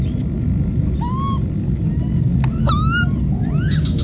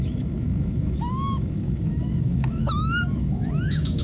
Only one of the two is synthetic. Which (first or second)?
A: second